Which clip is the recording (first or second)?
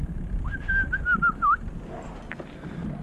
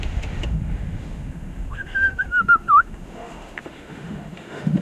first